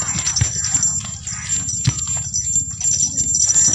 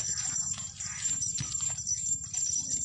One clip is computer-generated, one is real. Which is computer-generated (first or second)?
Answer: second